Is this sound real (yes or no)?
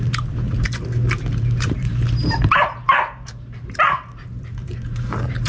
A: no